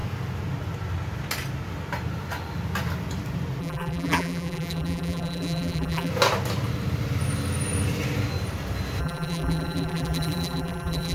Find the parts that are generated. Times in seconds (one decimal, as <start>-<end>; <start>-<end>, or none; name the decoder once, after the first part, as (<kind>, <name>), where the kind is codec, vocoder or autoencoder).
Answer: 3.6-6.1 (vocoder, BigVGAN v2); 9.0-11.1